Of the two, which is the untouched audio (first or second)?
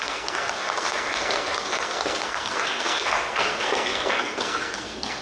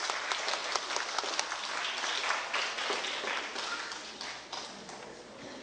second